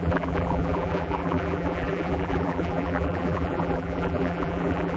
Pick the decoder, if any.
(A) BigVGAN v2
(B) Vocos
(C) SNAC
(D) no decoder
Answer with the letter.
A